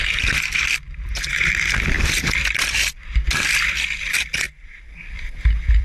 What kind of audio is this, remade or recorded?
recorded